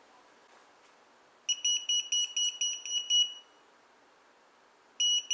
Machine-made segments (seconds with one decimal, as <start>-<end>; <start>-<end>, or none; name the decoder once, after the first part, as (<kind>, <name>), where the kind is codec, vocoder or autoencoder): none